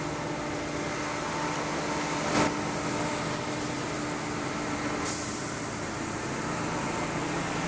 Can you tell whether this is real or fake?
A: real